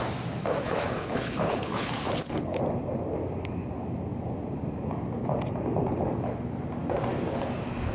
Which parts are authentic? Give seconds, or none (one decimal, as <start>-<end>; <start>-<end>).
0.0-0.6; 2.6-7.9